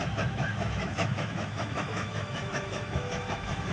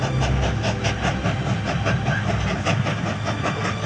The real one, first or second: second